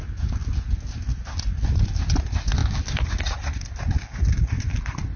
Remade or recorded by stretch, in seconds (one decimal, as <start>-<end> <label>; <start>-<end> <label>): 0.0-5.2 recorded